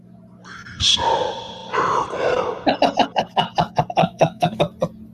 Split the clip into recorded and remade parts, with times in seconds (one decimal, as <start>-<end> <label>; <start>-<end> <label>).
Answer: 0.0-4.0 recorded; 4.0-4.6 remade; 4.6-5.1 recorded